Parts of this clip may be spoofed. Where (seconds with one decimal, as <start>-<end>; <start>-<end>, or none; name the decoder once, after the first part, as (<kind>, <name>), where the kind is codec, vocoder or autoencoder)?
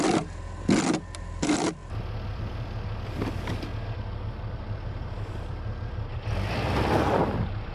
0.0-1.8 (vocoder, BigVGAN v2); 2.3-3.7; 4.5-7.7